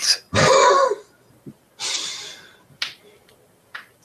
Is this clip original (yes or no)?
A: yes